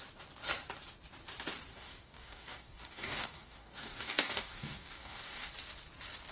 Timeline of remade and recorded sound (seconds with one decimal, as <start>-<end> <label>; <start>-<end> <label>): 0.0-1.7 recorded; 1.7-5.5 remade; 5.5-6.3 recorded